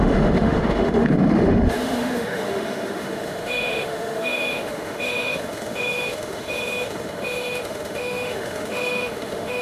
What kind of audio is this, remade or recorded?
remade